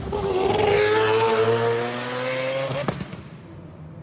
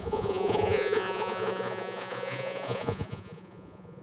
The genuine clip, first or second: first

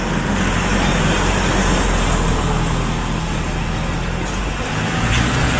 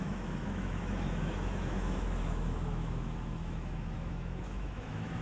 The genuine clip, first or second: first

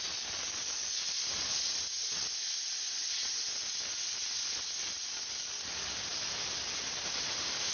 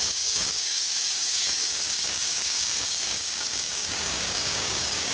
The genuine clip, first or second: first